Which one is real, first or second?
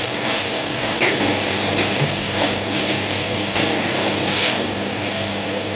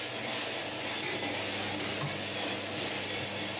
second